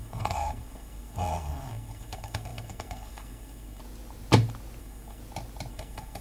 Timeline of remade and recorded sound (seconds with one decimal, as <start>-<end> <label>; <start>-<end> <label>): 0.0-3.8 remade; 3.8-4.8 recorded; 4.8-5.2 remade; 5.2-5.7 recorded; 5.7-6.2 remade